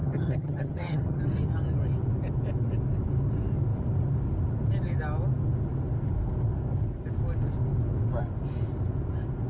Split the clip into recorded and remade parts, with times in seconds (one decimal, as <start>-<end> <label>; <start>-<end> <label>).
0.0-1.2 remade; 1.2-9.5 recorded